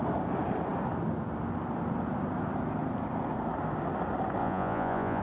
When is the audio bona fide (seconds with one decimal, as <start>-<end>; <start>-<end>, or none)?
0.0-4.4